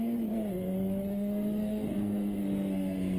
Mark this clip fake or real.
fake